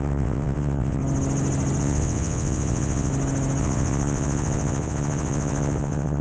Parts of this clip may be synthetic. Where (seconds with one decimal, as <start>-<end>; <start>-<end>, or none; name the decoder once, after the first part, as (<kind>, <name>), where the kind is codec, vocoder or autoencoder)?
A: 0.0-1.0 (vocoder, WaveNeXt); 1.8-3.1; 3.6-6.2

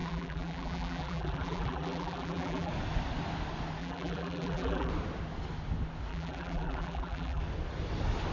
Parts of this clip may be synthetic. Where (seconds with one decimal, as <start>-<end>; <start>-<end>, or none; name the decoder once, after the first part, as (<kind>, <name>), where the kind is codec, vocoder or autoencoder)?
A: 0.0-2.7 (vocoder, BigVGAN v2); 3.8-4.9; 6.1-7.4

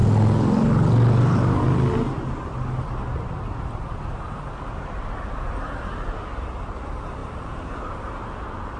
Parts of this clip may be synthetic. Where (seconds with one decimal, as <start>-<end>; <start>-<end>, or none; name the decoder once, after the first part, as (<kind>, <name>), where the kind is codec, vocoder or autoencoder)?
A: 7.2-7.7 (vocoder, BigVGAN v2)

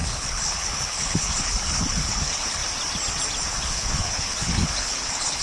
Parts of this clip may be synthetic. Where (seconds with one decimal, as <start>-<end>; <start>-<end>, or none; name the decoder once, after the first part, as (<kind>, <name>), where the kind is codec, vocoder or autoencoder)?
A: 0.0-2.6 (codec, HILCodec); 3.5-5.4

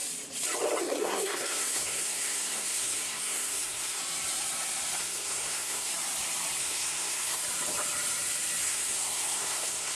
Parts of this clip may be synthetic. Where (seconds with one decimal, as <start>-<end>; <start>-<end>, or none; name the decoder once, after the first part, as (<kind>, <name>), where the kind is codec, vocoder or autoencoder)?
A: 0.8-4.0 (codec, SNAC); 5.0-5.9; 6.6-7.4; 8.6-9.9

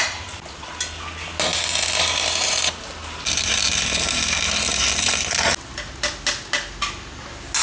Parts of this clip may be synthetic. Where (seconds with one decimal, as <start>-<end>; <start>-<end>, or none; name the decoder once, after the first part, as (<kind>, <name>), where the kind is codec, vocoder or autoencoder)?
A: none